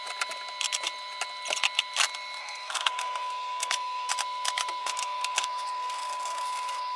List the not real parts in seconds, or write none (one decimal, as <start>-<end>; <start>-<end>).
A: 2.4-4.1; 4.8-7.0